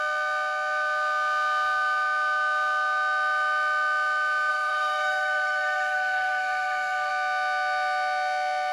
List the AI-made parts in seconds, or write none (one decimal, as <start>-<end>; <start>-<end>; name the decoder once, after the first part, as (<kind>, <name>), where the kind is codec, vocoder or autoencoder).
4.5-7.1 (codec, SNAC)